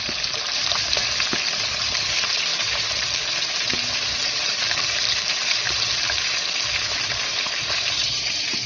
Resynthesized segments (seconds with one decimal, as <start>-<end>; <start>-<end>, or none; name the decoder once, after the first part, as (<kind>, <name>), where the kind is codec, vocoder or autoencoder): 0.0-1.0 (vocoder, BigVGAN v2); 1.7-8.7